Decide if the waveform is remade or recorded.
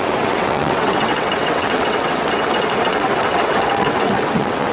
remade